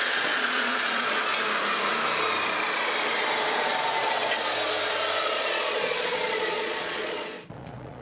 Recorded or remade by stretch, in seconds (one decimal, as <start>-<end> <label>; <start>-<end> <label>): 0.0-1.3 remade; 1.3-5.2 recorded; 5.2-8.0 remade